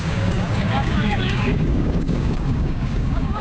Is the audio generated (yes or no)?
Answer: yes